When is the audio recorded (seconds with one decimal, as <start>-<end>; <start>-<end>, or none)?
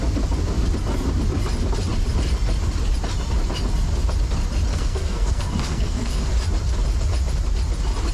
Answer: 0.0-4.7; 6.3-8.1